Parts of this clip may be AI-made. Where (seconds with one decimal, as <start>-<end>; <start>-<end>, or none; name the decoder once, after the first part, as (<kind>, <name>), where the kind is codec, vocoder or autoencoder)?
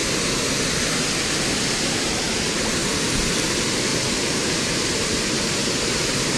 1.5-2.8 (vocoder, BigVGAN v2); 3.4-6.4